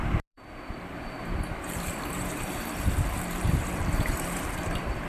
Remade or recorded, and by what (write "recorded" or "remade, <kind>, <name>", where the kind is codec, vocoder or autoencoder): remade, vocoder, BigVGAN v2